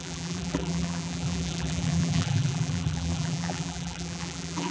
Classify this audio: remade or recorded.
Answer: remade